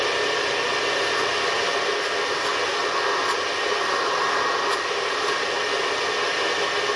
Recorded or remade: recorded